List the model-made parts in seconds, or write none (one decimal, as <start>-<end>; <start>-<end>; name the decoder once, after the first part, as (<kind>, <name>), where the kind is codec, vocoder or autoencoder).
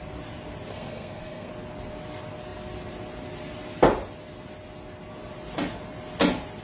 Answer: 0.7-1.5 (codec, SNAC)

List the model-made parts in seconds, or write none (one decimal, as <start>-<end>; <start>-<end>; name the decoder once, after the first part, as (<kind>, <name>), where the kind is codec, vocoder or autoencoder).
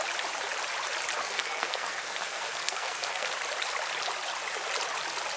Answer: 1.2-3.3 (codec, SNAC)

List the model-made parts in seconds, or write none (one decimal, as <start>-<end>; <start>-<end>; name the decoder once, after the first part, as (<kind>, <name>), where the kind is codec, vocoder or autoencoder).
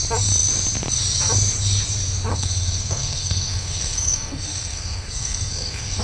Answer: 2.3-6.0 (codec, SNAC)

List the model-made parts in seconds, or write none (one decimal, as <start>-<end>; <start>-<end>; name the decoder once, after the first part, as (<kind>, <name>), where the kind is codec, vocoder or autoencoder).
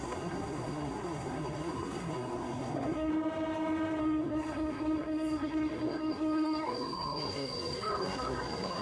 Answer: 0.0-3.1 (codec, SNAC); 4.0-8.8